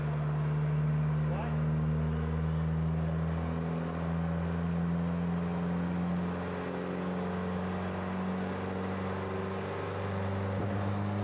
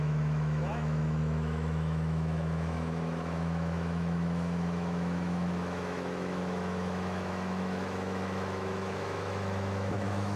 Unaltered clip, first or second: first